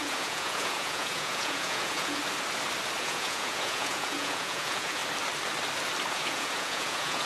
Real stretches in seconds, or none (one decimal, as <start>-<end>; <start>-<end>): 2.2-3.0; 5.0-6.1